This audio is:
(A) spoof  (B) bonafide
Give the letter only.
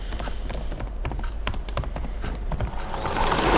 A